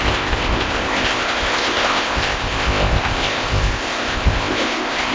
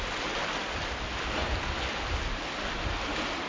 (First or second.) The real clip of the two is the second